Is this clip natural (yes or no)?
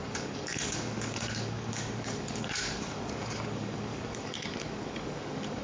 no